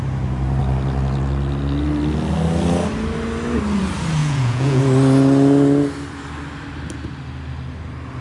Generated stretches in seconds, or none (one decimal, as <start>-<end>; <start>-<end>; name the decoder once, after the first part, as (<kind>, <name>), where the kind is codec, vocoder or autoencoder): 4.2-4.8 (vocoder, Vocos)